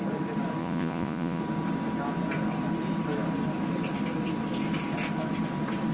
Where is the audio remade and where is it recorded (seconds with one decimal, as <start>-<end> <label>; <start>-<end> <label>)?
0.0-0.6 recorded; 0.6-1.4 remade; 1.4-5.9 recorded